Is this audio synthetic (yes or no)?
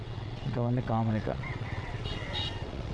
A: yes